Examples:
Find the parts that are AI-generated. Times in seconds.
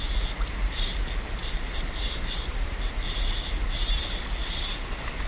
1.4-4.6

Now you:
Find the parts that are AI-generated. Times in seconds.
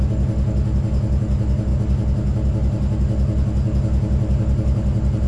none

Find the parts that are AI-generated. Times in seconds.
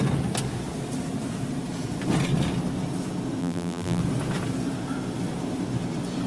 3.4-4.0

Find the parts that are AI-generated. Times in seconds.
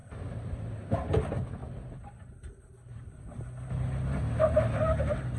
0.0-0.7; 1.6-3.2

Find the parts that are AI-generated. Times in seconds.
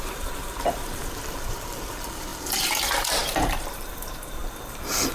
0.0-5.1